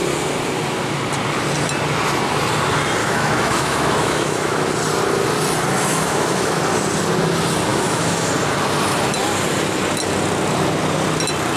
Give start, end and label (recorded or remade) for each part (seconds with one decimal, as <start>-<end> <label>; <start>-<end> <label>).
0.0-3.0 recorded; 3.0-4.7 remade; 4.7-5.9 recorded; 5.9-6.6 remade; 6.6-7.7 recorded; 7.7-8.3 remade; 8.3-11.6 recorded